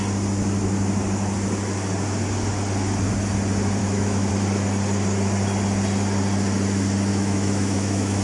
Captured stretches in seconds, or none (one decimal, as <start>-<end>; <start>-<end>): 0.0-3.8; 4.3-7.1

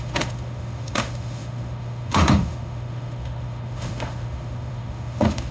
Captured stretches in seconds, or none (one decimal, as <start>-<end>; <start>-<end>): none